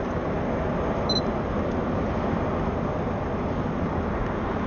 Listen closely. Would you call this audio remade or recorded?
recorded